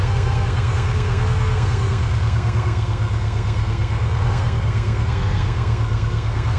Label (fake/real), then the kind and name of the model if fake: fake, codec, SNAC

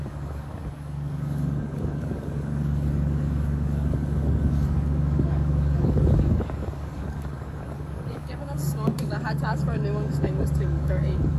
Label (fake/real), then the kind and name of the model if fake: fake, codec, DAC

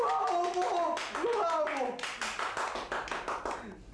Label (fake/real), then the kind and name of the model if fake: real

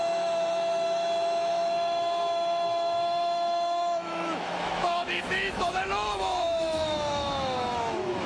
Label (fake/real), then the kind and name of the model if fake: fake, autoencoder, DAC-VAE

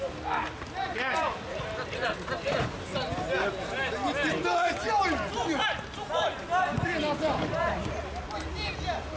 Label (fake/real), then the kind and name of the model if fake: real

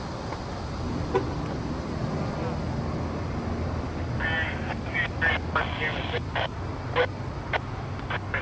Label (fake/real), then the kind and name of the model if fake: real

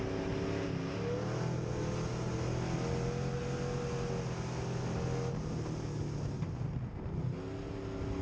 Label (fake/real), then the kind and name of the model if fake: real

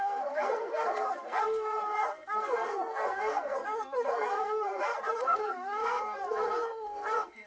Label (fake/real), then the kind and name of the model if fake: fake, codec, SNAC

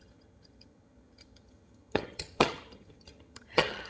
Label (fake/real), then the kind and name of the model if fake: fake, vocoder, HiFi-GAN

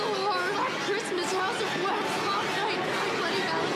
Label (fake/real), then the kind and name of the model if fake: real